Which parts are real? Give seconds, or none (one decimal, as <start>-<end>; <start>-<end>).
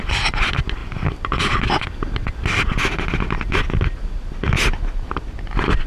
0.0-5.9